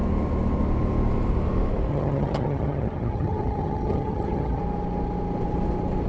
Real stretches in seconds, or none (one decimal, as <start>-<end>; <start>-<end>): 0.0-1.9; 4.6-6.1

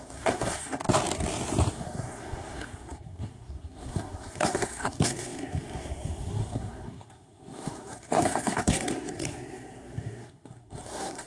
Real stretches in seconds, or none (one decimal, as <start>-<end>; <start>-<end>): 0.8-1.7

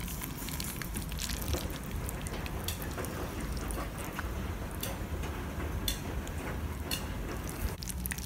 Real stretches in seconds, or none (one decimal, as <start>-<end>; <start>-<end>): 0.0-4.0; 4.7-8.3

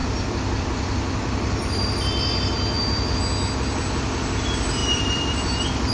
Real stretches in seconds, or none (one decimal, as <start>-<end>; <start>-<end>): 3.2-4.8